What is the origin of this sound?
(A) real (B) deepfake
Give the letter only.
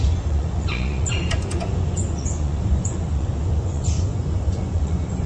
B